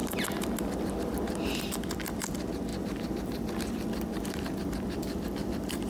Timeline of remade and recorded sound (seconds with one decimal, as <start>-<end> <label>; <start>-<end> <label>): 0.0-1.6 remade; 1.6-2.7 recorded; 2.7-5.9 remade